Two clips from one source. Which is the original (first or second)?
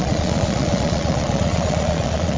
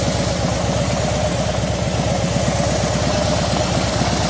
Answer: second